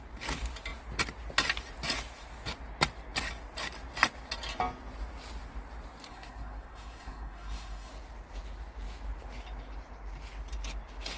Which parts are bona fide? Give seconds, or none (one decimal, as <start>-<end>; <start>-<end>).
0.0-6.1; 7.9-11.2